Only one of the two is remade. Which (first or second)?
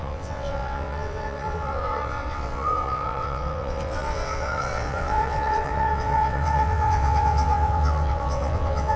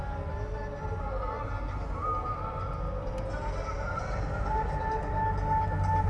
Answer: first